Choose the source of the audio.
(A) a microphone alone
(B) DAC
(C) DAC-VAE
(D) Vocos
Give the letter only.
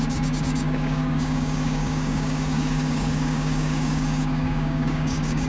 B